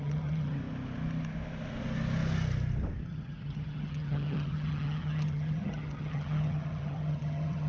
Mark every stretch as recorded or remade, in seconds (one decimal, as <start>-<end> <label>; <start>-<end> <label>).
0.0-0.6 remade; 0.6-3.0 recorded; 3.0-7.7 remade